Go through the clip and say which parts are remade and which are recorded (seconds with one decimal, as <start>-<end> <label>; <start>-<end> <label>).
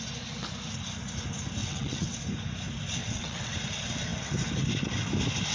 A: 0.0-1.6 recorded; 1.6-2.2 remade; 2.2-3.0 recorded; 3.0-3.5 remade; 3.5-5.5 recorded